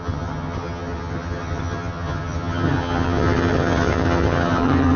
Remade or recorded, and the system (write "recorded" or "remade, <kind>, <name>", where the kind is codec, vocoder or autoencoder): remade, vocoder, HiFi-GAN